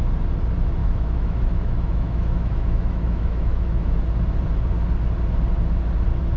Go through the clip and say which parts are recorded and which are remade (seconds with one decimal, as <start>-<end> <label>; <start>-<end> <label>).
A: 0.0-0.8 recorded; 0.8-4.0 remade; 4.0-6.4 recorded